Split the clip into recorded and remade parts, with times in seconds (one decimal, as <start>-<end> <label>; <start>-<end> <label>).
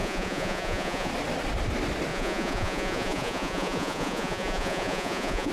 0.0-1.1 remade; 1.1-2.1 recorded; 2.1-5.5 remade